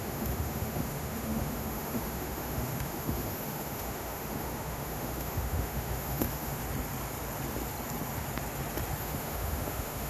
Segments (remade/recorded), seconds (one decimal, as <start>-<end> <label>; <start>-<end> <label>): 0.0-6.6 remade; 6.6-9.0 recorded; 9.0-10.1 remade